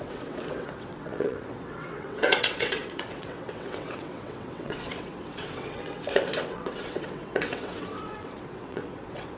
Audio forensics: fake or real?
fake